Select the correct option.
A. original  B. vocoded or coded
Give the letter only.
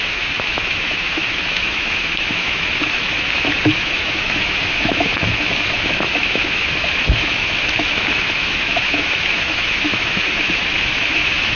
B